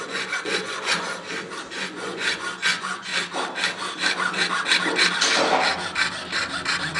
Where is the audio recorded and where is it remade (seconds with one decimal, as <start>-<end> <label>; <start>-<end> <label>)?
0.0-1.2 remade; 1.2-1.8 recorded; 1.8-3.1 remade; 3.1-7.0 recorded